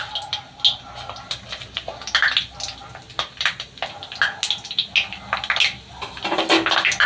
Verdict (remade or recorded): recorded